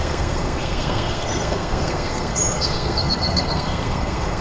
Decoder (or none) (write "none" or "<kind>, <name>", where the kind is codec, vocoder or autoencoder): codec, SNAC